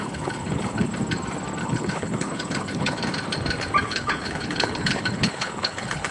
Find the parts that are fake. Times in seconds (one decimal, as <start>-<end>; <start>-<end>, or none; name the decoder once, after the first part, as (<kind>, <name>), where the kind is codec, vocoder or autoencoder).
0.0-0.9 (codec, HILCodec); 1.6-3.0; 3.8-6.1